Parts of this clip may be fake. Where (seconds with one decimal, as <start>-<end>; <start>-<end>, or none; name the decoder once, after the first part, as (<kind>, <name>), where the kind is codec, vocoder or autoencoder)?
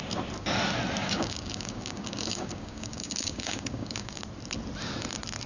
1.0-4.2 (codec, DAC)